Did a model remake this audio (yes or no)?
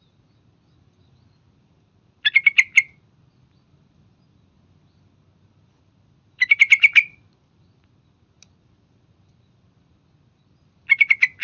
no